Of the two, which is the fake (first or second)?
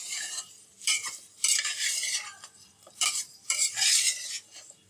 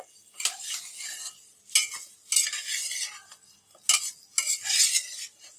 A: first